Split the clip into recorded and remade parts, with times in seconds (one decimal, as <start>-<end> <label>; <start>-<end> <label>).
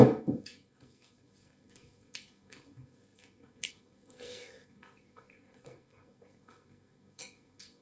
0.0-7.8 remade